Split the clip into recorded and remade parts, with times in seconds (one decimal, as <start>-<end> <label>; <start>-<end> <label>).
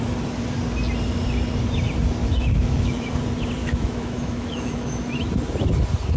0.0-2.2 recorded; 2.2-3.1 remade; 3.1-3.6 recorded; 3.6-5.3 remade; 5.3-6.2 recorded